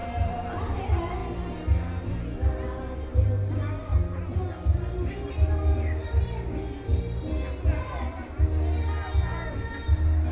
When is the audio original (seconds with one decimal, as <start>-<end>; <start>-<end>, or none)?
0.6-10.3